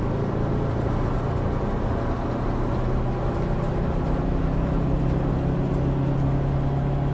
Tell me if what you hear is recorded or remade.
recorded